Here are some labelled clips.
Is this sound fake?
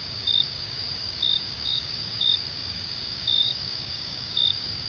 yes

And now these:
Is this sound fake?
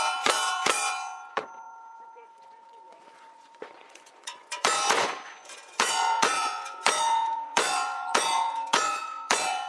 yes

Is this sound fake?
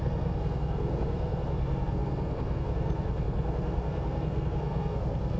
yes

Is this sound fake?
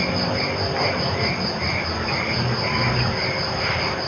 no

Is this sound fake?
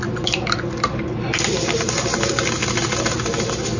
no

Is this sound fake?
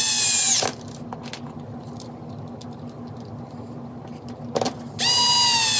no